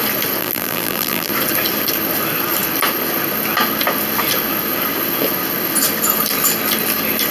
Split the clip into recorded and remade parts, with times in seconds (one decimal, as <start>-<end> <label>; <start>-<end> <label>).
0.0-0.4 recorded; 0.4-1.3 remade; 1.3-7.3 recorded

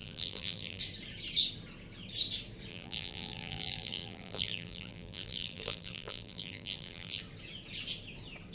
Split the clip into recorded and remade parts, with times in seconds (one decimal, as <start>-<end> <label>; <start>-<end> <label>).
0.0-0.8 remade; 0.8-2.7 recorded; 2.7-7.2 remade; 7.2-8.5 recorded